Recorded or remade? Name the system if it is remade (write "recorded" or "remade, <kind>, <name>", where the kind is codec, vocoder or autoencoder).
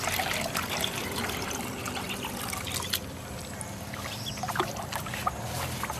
recorded